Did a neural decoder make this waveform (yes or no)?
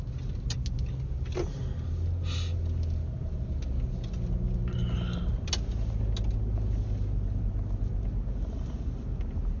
no